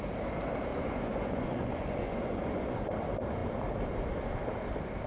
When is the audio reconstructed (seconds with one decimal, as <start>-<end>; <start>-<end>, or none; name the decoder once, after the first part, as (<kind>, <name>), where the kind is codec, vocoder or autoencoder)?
0.7-2.8 (vocoder, Vocos)